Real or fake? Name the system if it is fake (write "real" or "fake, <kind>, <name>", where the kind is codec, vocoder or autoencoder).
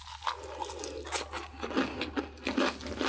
real